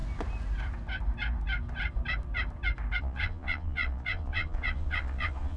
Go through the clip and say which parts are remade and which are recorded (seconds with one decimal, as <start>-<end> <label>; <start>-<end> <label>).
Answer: 0.0-3.0 recorded; 3.0-5.6 remade